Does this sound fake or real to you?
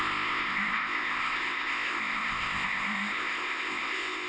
fake